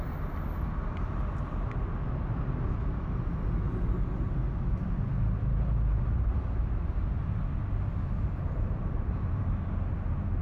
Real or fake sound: real